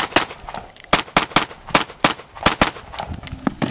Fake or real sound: real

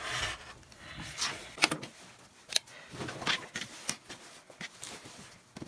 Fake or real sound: real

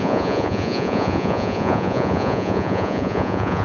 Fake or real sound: fake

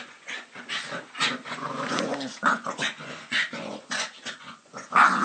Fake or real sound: fake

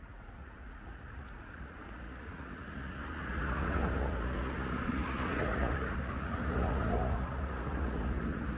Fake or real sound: fake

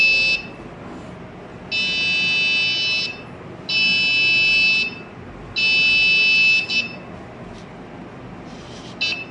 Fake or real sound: real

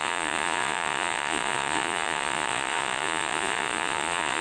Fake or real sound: fake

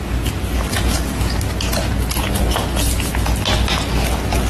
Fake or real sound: real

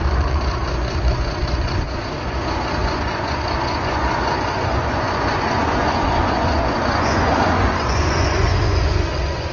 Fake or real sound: fake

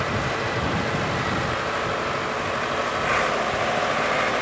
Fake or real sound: real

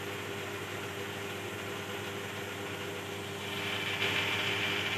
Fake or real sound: real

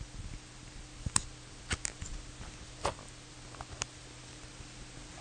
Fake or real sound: real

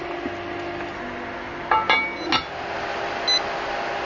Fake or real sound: real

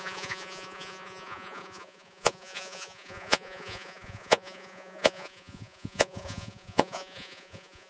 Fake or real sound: fake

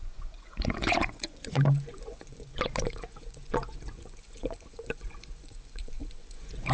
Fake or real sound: fake